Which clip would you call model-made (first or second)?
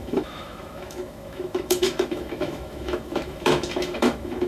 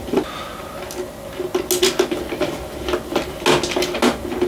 first